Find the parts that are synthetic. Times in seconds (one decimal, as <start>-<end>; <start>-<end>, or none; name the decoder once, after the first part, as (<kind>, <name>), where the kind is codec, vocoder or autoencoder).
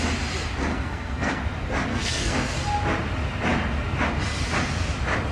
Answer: 0.7-1.4 (codec, SNAC); 1.9-2.6